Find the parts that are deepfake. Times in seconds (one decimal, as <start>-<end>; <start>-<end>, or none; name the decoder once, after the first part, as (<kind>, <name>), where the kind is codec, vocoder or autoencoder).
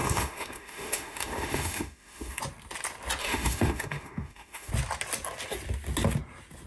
0.0-2.4 (autoencoder, DAC-VAE); 3.2-4.7